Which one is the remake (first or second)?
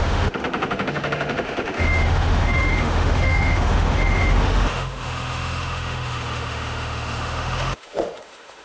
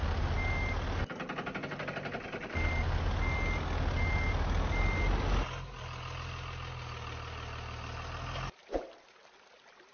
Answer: first